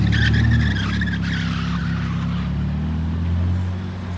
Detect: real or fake real